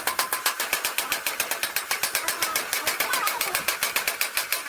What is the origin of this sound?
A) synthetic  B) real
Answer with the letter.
B